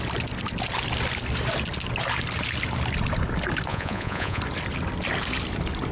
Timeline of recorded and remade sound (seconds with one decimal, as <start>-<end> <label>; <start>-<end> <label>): 0.0-3.7 recorded; 3.7-4.4 remade; 4.4-5.9 recorded

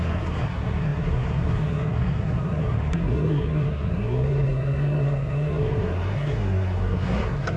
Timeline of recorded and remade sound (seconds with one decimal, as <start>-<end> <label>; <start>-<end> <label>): 0.0-7.6 remade

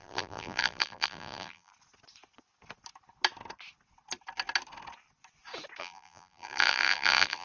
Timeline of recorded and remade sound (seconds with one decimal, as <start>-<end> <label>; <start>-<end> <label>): 0.0-1.7 remade; 1.7-5.8 recorded; 5.8-7.4 remade

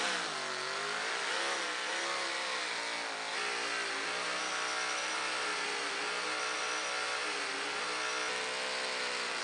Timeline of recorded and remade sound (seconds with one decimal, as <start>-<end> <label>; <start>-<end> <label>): 0.0-9.4 recorded

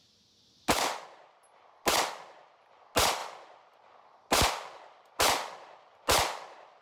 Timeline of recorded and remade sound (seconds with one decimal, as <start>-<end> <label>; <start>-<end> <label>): 0.0-6.8 recorded